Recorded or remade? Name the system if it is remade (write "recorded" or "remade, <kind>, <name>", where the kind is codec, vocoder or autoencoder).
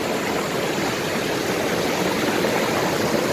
recorded